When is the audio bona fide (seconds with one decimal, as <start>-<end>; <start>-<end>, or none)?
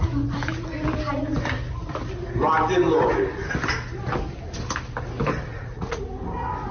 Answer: 0.0-5.5; 6.0-6.7